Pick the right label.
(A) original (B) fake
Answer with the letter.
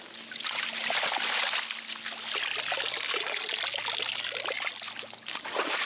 A